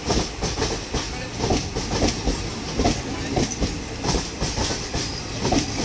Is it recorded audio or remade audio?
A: recorded